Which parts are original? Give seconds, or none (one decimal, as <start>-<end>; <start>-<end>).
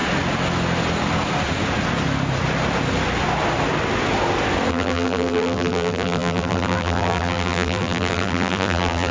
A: 0.0-4.7